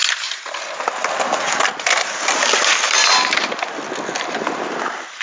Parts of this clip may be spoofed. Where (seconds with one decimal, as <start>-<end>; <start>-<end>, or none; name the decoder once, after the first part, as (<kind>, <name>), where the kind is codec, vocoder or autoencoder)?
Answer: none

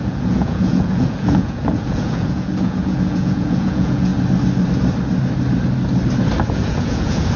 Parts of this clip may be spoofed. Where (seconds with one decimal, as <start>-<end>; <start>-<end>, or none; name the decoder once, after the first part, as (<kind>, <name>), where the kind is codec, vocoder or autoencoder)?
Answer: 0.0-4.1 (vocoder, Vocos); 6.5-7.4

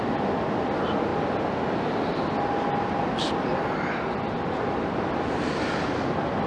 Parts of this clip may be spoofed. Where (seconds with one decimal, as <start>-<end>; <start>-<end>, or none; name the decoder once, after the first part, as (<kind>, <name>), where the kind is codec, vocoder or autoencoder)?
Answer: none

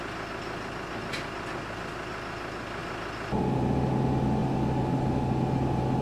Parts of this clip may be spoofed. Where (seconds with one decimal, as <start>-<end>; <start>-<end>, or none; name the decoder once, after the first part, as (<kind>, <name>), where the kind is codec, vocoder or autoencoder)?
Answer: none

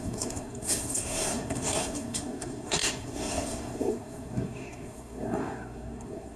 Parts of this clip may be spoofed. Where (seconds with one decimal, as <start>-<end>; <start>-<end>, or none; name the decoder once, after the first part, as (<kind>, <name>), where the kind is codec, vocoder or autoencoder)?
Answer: 0.0-6.4 (codec, SNAC)

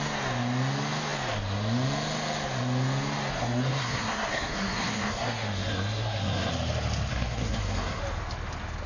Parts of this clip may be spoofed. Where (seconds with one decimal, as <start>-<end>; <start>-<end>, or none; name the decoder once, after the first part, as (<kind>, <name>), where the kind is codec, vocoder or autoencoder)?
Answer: 3.3-6.5 (codec, SNAC); 7.1-8.0

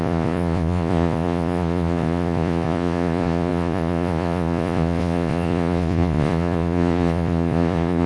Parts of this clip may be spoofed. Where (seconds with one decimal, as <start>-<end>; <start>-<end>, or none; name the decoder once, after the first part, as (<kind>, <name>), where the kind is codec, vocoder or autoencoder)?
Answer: 0.0-8.1 (vocoder, Vocos)